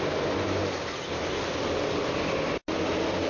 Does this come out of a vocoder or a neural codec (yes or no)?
no